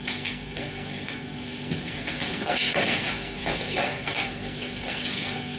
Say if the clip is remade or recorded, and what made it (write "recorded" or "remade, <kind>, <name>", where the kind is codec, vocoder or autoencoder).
remade, codec, SNAC